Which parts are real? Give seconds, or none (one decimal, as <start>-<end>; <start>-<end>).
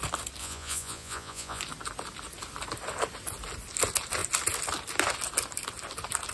0.0-0.4; 1.6-6.3